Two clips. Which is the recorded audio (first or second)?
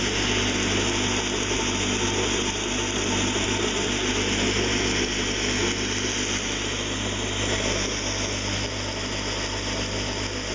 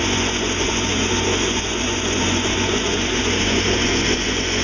first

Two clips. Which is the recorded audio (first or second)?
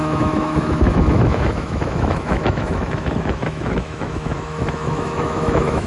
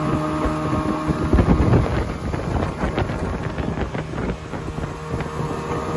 second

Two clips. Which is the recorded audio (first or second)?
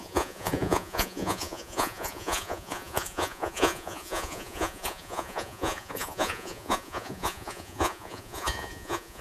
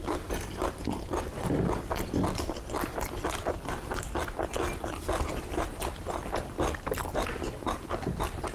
second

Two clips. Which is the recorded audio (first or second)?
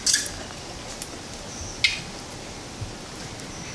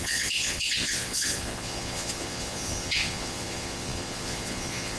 first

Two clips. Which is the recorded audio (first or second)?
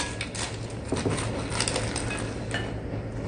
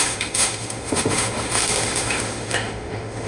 first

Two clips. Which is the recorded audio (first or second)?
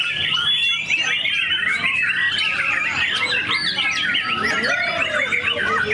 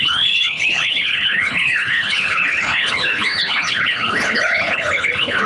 first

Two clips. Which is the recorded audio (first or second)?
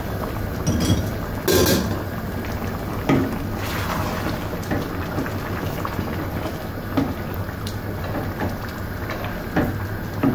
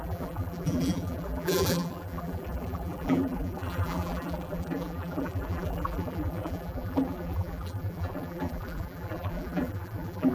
first